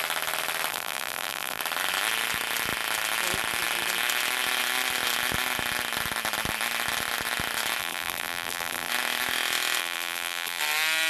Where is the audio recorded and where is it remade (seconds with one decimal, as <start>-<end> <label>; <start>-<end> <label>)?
0.0-0.7 recorded; 0.7-1.6 remade; 1.6-7.8 recorded; 7.8-8.9 remade; 8.9-9.8 recorded; 9.8-10.6 remade; 10.6-11.1 recorded